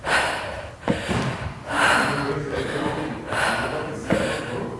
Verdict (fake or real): real